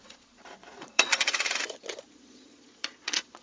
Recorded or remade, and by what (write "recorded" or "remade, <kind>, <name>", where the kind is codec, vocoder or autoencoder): remade, vocoder, Vocos